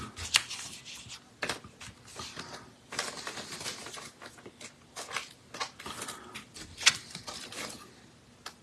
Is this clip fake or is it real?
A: real